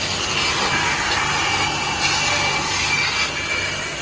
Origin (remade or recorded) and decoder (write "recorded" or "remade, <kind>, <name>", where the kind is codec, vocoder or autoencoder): recorded